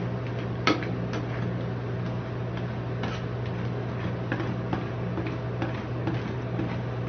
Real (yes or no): yes